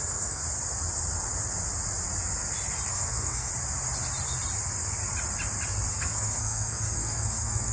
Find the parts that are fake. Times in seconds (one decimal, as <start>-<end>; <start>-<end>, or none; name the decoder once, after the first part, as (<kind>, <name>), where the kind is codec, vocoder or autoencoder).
0.0-0.4 (codec, SNAC); 2.9-3.5; 5.9-7.7